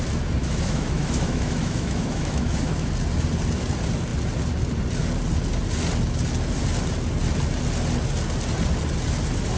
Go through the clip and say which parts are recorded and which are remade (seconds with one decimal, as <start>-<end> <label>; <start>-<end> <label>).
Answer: 0.0-0.4 recorded; 0.4-2.9 remade; 2.9-9.6 recorded